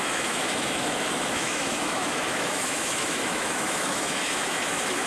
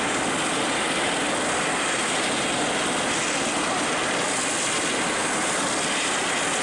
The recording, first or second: second